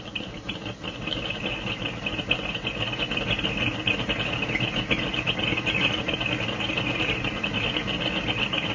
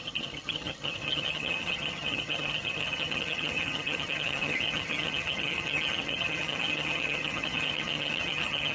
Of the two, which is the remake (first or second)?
second